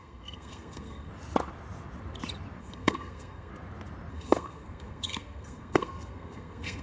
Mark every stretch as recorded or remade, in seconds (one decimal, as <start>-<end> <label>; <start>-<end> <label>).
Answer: 0.0-1.1 remade; 1.1-2.6 recorded; 2.6-3.5 remade; 3.5-4.1 recorded; 4.1-6.8 remade